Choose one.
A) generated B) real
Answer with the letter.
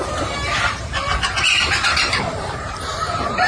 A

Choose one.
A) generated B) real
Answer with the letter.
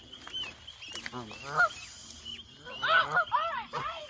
B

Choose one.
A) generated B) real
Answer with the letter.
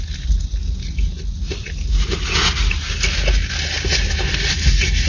B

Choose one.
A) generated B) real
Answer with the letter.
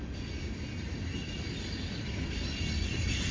A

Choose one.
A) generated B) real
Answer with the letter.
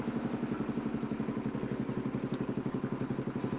A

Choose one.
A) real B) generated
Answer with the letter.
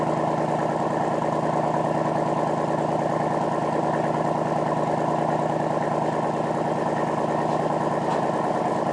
A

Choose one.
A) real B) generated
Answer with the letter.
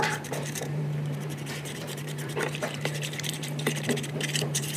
B